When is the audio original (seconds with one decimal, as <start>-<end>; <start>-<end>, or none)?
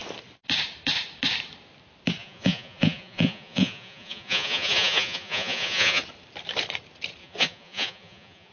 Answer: 0.0-2.2; 6.0-7.2